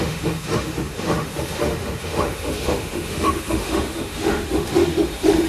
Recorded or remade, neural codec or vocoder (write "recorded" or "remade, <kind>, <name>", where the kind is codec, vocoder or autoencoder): remade, autoencoder, DAC-VAE